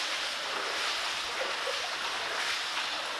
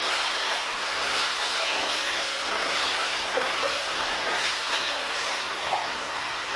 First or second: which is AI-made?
second